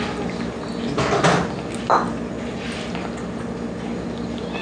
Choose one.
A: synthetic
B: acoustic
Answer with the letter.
B